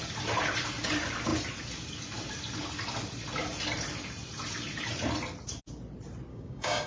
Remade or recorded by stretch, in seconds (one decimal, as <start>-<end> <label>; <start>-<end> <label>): 0.0-6.3 recorded; 6.3-6.9 remade